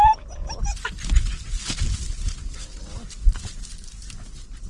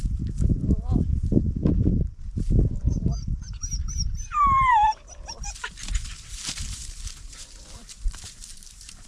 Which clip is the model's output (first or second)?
second